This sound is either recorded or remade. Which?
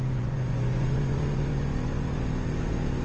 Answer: remade